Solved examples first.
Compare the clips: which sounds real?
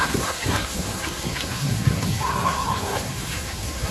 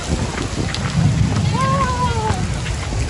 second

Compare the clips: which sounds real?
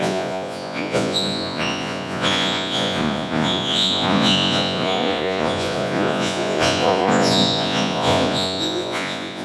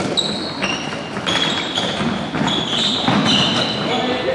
second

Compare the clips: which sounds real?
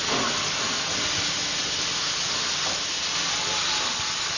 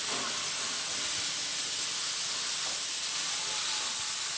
first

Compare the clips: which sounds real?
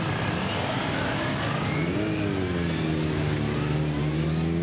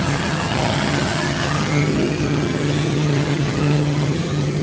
first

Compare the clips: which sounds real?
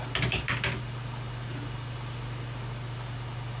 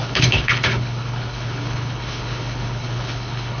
first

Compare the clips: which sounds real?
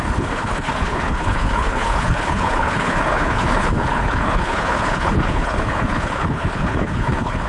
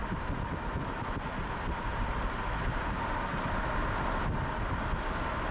second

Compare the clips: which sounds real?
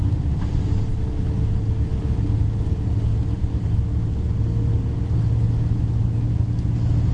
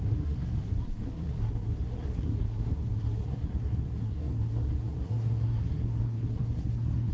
first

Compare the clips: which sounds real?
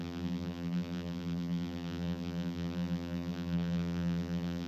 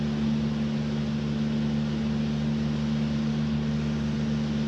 second